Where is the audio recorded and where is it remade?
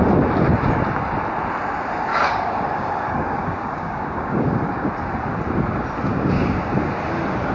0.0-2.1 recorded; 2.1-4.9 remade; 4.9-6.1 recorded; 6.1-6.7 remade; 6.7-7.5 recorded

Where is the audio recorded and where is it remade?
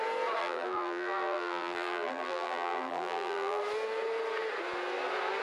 0.0-0.4 recorded; 0.4-3.6 remade; 3.6-5.4 recorded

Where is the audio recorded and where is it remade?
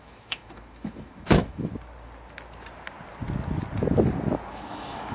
0.0-1.7 remade; 1.7-4.5 recorded; 4.5-5.1 remade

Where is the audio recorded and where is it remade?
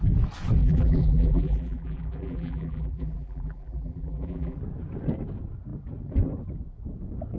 0.0-0.6 recorded; 0.6-4.6 remade; 4.6-7.4 recorded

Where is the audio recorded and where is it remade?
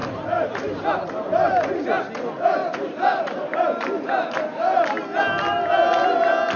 0.0-1.1 remade; 1.1-2.6 recorded; 2.6-4.4 remade; 4.4-6.6 recorded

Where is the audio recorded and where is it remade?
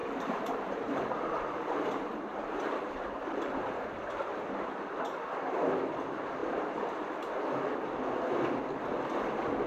0.0-3.9 remade; 3.9-9.7 recorded